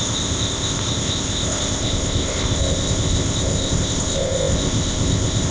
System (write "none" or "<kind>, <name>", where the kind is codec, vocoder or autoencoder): codec, ZipCodec